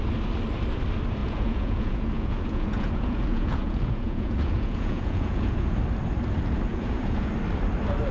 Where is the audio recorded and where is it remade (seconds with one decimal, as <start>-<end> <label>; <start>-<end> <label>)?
0.0-1.2 recorded; 1.2-5.8 remade; 5.8-6.7 recorded; 6.7-7.3 remade; 7.3-8.1 recorded